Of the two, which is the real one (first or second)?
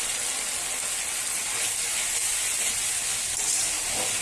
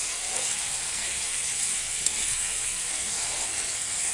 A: first